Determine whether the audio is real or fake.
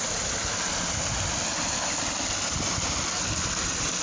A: real